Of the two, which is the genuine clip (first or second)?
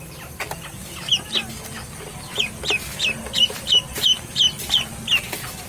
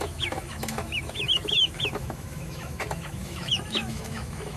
first